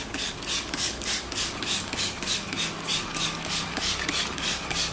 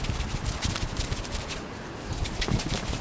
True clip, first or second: second